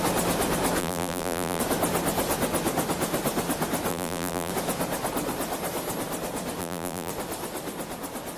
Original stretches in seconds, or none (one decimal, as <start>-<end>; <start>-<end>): 0.0-0.8; 1.6-3.9; 4.5-6.6; 7.1-8.4